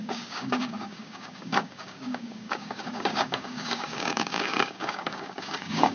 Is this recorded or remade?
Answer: remade